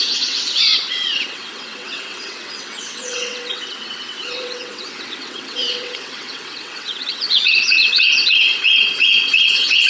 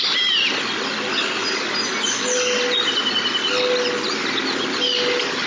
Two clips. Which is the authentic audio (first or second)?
second